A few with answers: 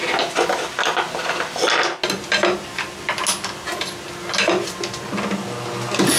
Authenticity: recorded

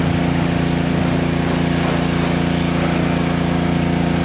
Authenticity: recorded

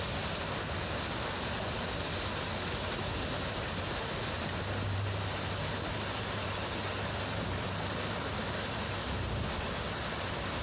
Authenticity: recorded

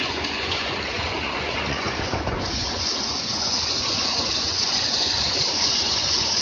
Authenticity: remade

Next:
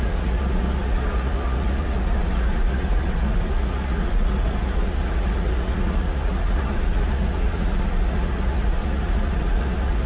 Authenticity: remade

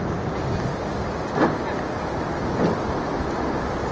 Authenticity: recorded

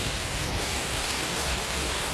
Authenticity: remade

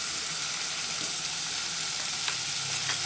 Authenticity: recorded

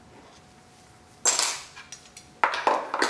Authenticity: recorded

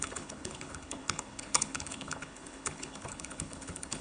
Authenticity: remade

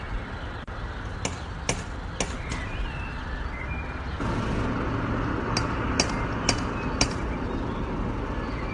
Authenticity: recorded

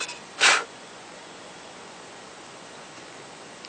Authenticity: remade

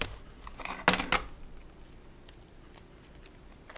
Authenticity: recorded